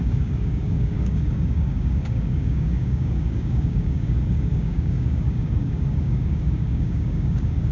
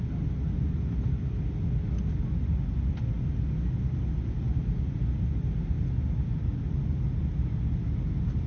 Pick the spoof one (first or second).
first